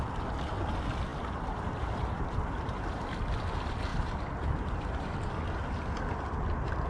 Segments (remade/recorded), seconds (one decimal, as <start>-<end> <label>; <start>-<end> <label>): 0.0-1.1 recorded; 1.1-3.1 remade; 3.1-3.9 recorded; 3.9-5.3 remade; 5.3-6.9 recorded